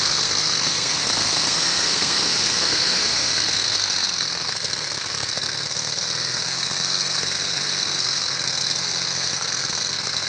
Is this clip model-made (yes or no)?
yes